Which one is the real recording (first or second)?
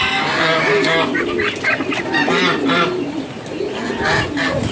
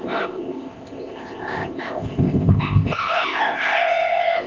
first